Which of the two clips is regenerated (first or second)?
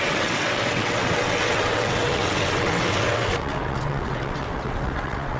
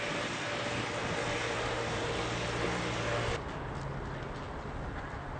first